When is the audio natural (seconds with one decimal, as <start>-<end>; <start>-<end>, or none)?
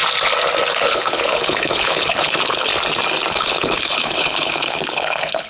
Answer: 0.0-0.7; 2.7-3.3